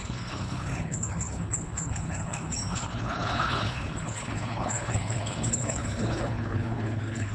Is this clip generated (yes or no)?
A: yes